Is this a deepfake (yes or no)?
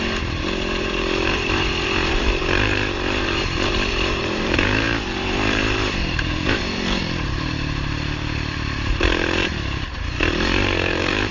yes